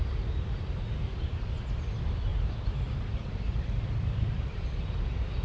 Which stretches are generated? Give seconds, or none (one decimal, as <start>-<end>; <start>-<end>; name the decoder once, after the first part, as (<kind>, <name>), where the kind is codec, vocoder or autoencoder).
2.3-5.0 (vocoder, BigVGAN v2)